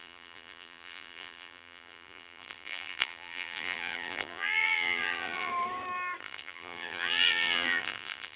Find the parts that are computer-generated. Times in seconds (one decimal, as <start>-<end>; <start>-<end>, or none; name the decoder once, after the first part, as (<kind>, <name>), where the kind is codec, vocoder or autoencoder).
0.0-5.5 (vocoder, BigVGAN v2); 6.2-8.4

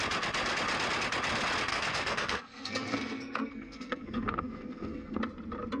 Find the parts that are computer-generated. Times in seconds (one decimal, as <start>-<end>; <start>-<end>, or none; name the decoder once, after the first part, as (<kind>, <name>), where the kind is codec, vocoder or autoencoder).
1.7-5.2 (codec, SNAC)

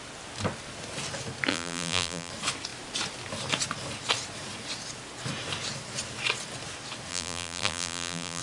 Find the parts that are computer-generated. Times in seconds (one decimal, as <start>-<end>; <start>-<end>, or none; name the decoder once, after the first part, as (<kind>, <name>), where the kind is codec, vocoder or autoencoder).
1.5-2.3 (vocoder, BigVGAN v2); 7.1-8.4

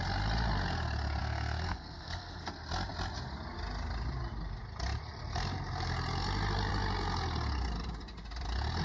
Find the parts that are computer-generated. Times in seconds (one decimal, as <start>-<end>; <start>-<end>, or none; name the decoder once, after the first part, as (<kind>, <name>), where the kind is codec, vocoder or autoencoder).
1.2-2.5 (codec, SNAC)

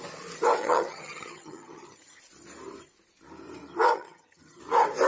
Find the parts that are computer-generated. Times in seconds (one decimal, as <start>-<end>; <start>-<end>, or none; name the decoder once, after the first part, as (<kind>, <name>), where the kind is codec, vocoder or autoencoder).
0.6-2.2 (vocoder, HiFi-GAN); 3.9-4.6

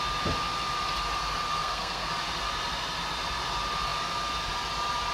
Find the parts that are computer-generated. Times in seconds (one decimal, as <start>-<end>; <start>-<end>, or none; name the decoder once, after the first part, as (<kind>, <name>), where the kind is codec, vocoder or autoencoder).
1.6-2.1 (codec, SNAC)